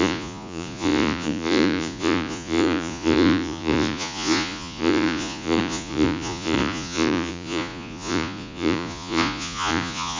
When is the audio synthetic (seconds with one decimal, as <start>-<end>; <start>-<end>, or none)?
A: 0.0-10.2